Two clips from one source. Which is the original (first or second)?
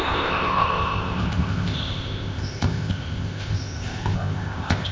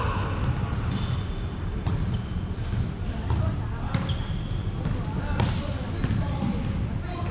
second